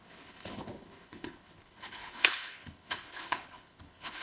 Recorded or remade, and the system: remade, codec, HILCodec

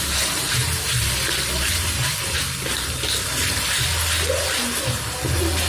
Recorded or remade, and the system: recorded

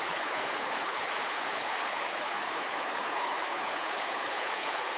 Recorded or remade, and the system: remade, codec, HILCodec